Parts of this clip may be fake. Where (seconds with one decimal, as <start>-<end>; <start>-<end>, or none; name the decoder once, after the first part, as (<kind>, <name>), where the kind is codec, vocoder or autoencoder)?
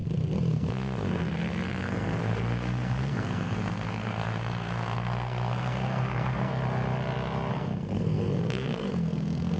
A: 0.5-6.5 (codec, SNAC); 7.5-9.6